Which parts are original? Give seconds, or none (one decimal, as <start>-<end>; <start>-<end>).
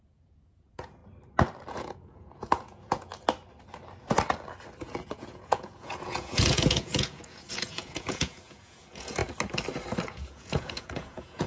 1.0-1.7; 3.1-4.8; 9.2-10.0